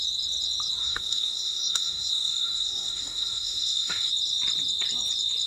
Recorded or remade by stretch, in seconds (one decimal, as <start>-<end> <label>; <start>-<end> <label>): 0.0-0.8 recorded; 0.8-4.1 remade; 4.1-5.5 recorded